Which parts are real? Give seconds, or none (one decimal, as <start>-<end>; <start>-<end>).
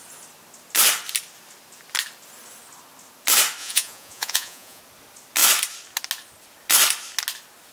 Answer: 0.0-3.6; 4.8-7.7